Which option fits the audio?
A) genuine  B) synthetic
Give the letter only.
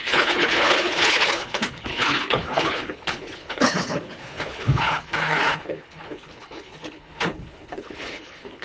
B